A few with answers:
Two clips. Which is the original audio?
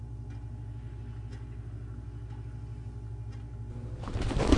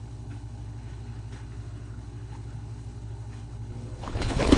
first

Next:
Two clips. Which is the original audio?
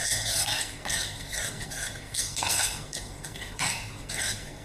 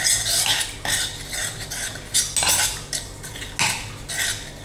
second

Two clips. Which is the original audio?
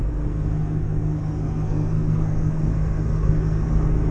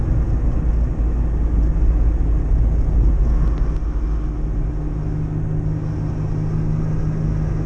second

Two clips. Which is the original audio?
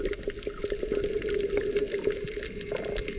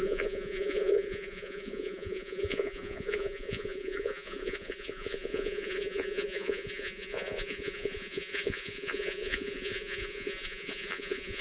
first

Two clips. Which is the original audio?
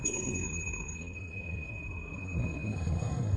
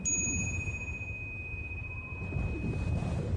second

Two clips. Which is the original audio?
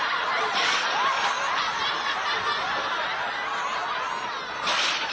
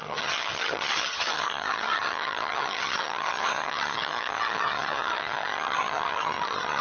first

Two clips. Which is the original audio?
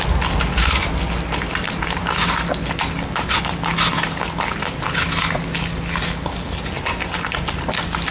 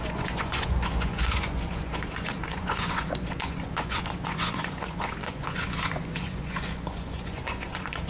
first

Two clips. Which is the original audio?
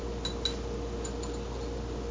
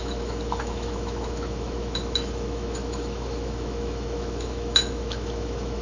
first